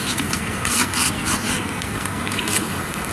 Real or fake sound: fake